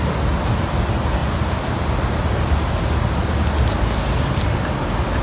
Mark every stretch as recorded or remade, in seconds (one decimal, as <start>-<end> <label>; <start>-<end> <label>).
0.0-5.2 recorded